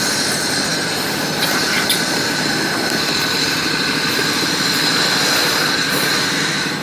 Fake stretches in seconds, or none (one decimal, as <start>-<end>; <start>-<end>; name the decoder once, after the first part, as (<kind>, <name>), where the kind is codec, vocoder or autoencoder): none